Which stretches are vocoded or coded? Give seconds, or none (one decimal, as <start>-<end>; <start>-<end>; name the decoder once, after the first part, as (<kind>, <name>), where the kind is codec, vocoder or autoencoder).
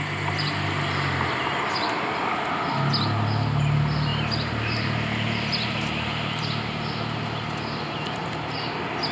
4.1-6.6 (vocoder, BigVGAN v2)